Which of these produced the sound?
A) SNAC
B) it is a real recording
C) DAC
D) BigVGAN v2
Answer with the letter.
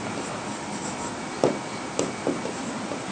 B